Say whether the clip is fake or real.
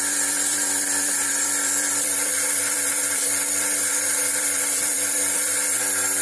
fake